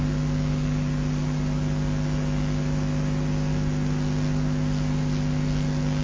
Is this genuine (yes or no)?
yes